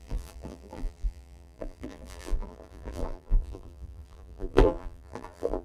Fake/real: fake